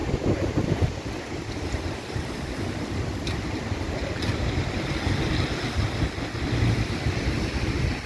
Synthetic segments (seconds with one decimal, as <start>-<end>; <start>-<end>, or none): none